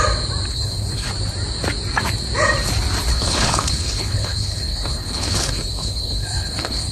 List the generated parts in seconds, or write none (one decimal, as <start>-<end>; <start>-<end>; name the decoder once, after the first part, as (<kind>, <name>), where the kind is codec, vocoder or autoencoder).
0.5-1.1 (codec, HILCodec); 3.1-6.9

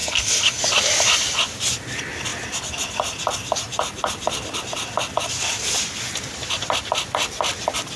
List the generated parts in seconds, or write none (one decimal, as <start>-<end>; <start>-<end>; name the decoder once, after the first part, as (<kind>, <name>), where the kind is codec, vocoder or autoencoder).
0.0-0.6 (codec, SNAC)

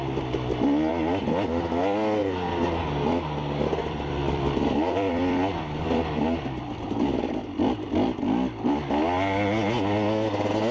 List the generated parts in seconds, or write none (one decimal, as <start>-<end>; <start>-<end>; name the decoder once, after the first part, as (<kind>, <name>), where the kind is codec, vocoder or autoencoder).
3.8-8.2 (vocoder, BigVGAN v2)

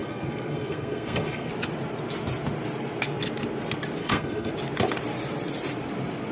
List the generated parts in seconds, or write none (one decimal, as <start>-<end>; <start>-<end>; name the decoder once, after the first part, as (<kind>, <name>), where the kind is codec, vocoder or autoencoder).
0.0-1.5 (codec, SNAC); 4.0-4.5